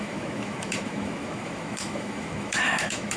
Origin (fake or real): fake